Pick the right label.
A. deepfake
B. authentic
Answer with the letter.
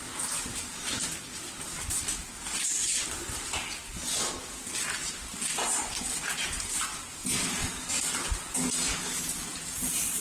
B